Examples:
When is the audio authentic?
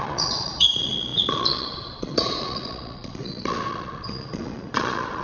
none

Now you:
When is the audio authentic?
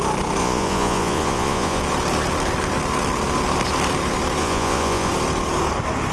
0.0-0.4; 1.8-4.4; 5.1-6.1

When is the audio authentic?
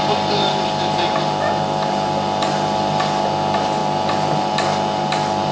0.0-5.5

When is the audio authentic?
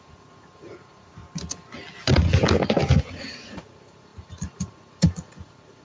1.2-3.0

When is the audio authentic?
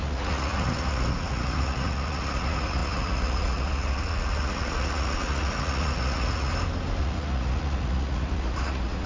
6.5-7.0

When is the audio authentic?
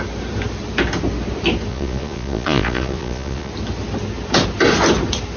0.0-1.7; 3.5-5.4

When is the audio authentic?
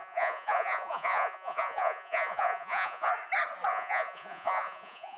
3.1-3.7